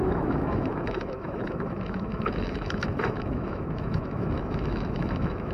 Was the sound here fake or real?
fake